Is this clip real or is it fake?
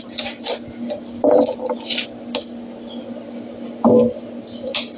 real